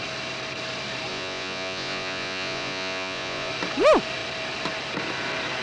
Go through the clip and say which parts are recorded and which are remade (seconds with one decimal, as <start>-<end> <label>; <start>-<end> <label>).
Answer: 0.0-1.1 recorded; 1.1-3.5 remade; 3.5-5.6 recorded